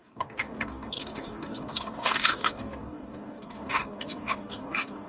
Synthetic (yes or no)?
yes